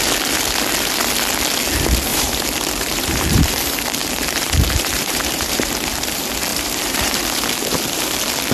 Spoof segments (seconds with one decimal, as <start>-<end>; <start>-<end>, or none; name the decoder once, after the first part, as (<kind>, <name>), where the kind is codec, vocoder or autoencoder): 2.1-3.6 (vocoder, BigVGAN v2); 4.0-5.7; 6.5-7.2

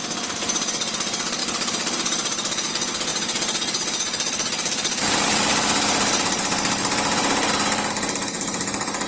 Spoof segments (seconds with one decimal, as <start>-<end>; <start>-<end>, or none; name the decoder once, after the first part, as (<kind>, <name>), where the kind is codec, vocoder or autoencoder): 1.4-2.7 (vocoder, BigVGAN v2); 3.1-7.5

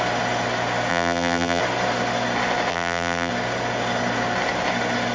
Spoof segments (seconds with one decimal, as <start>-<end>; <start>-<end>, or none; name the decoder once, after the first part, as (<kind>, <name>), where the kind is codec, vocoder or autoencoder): 0.9-1.6 (vocoder, BigVGAN v2); 2.7-3.3

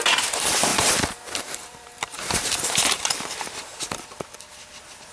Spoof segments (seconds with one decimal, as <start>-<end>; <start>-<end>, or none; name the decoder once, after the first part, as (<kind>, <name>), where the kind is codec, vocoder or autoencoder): 0.7-3.8 (vocoder, BigVGAN v2)

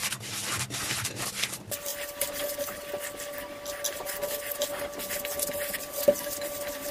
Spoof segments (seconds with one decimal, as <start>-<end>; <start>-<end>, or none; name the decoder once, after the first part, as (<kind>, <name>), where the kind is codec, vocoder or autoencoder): none

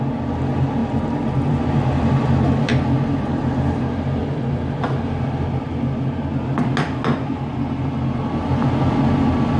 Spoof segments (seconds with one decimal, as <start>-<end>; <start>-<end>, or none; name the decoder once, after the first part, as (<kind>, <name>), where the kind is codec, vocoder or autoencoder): 0.8-3.8 (vocoder, BigVGAN v2); 4.2-5.7